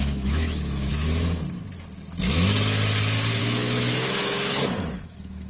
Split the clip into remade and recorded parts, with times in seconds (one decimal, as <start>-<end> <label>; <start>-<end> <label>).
0.0-0.9 remade; 0.9-3.4 recorded; 3.4-5.5 remade